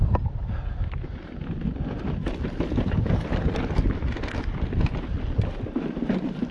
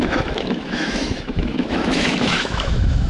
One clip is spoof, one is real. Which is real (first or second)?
first